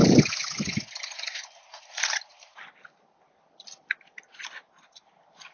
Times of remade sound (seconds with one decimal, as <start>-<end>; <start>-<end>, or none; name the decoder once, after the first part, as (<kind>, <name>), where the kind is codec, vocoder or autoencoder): 0.0-3.3 (vocoder, BigVGAN v2)